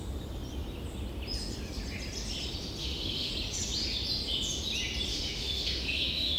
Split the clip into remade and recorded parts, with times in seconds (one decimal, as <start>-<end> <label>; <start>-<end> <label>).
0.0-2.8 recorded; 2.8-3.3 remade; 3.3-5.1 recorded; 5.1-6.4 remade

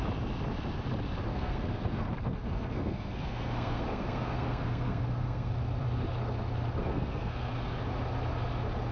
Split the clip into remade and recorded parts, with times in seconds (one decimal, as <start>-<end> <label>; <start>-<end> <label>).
0.0-1.3 recorded; 1.3-5.5 remade; 5.5-6.8 recorded; 6.8-7.5 remade; 7.5-8.9 recorded

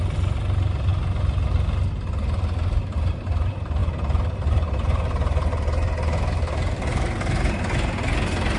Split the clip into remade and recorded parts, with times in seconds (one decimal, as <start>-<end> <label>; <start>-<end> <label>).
0.0-8.6 recorded

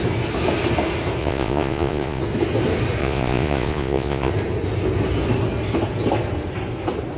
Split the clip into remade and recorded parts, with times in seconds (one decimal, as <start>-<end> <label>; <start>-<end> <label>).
0.0-1.2 recorded; 1.2-2.2 remade; 2.2-3.0 recorded; 3.0-4.3 remade; 4.3-7.2 recorded

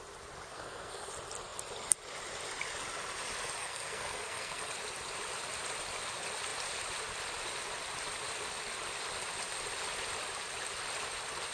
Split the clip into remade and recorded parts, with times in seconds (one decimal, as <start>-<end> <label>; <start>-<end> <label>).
0.0-0.5 recorded; 0.5-1.1 remade; 1.1-3.6 recorded; 3.6-4.7 remade; 4.7-11.5 recorded

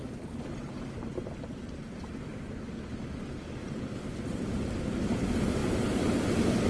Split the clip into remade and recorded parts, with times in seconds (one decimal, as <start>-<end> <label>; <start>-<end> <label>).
0.0-6.7 recorded

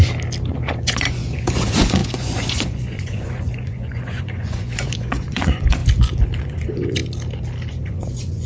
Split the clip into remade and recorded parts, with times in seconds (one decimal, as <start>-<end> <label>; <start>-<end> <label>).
0.0-0.5 recorded; 0.5-5.8 remade; 5.8-6.4 recorded; 6.4-7.0 remade; 7.0-7.7 recorded; 7.7-8.5 remade